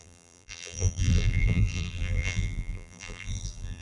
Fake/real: fake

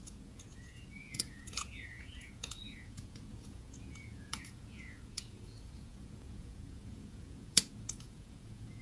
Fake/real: fake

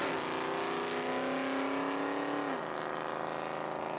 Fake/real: real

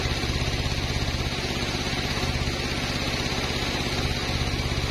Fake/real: real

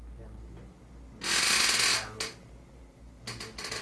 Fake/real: real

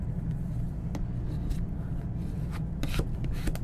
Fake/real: fake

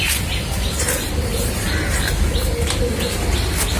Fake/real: real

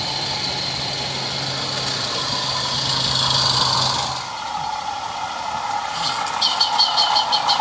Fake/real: real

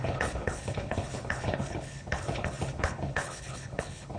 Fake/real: fake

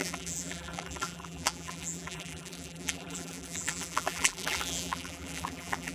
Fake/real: fake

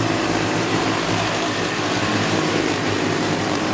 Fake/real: fake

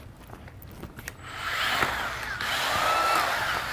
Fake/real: real